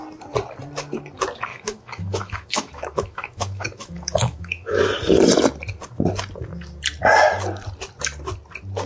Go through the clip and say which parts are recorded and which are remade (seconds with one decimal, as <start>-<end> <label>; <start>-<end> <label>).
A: 0.0-1.5 recorded; 1.5-4.8 remade; 4.8-8.9 recorded